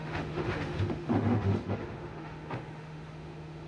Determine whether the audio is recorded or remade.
remade